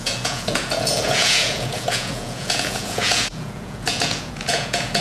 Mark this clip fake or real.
fake